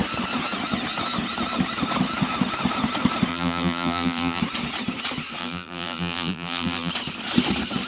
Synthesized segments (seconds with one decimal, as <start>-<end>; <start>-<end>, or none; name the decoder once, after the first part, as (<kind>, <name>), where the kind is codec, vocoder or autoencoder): 3.3-4.4 (vocoder, BigVGAN v2); 5.4-6.9